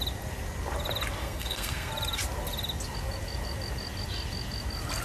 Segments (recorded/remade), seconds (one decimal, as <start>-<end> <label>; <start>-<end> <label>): 0.0-1.2 recorded; 1.2-1.9 remade; 1.9-5.0 recorded